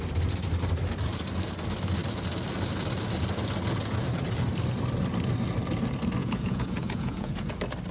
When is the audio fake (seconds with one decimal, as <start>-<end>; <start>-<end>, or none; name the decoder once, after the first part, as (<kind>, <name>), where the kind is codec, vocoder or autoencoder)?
6.2-7.5 (vocoder, Vocos)